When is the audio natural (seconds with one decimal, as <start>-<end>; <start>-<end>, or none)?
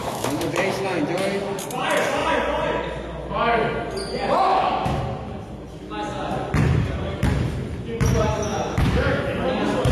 1.0-4.5; 5.0-8.5; 9.2-9.9